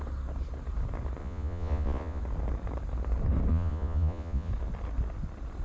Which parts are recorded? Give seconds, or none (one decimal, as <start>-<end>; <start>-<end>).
0.0-1.2; 2.2-3.5; 4.5-5.6